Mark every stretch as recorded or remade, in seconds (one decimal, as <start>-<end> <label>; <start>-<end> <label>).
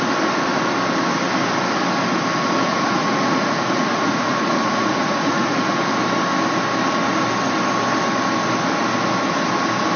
0.0-2.7 recorded; 2.7-5.9 remade; 5.9-10.0 recorded